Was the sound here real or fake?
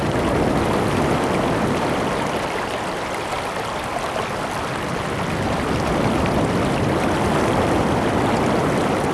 real